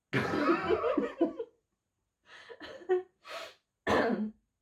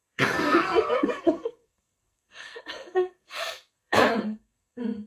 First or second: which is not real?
second